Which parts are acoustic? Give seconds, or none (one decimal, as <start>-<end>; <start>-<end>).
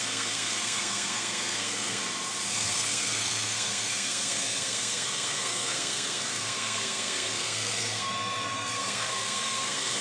2.0-2.5